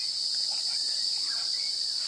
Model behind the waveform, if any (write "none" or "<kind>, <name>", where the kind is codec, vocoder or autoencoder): none